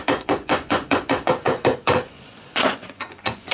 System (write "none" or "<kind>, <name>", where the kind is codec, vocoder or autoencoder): vocoder, Vocos